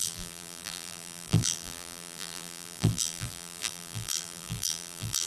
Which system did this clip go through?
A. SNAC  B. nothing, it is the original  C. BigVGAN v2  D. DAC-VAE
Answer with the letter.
C